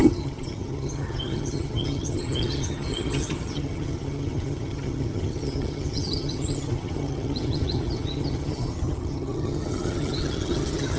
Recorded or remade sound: remade